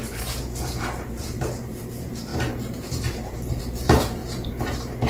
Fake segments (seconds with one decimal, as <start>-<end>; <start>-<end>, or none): 0.0-5.1